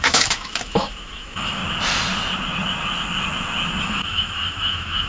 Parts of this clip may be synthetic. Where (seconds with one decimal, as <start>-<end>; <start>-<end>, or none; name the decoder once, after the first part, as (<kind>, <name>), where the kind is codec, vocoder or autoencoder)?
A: 0.0-1.6 (autoencoder, DAC-VAE); 3.8-5.1